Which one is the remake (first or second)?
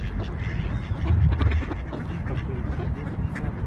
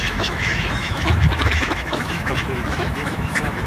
second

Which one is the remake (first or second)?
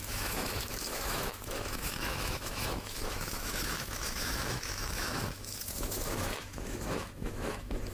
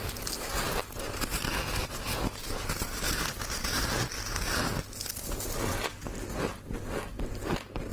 first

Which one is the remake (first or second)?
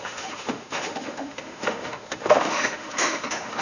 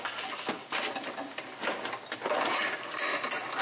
first